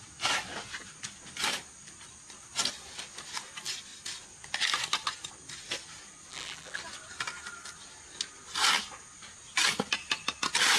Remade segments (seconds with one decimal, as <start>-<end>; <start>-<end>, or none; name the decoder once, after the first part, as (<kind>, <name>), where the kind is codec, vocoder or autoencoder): 6.3-6.8 (vocoder, BigVGAN v2)